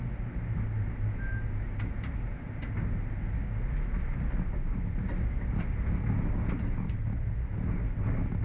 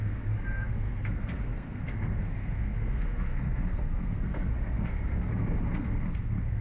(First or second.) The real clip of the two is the first